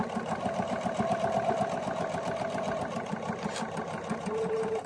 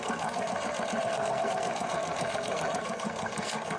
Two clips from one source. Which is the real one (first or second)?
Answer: first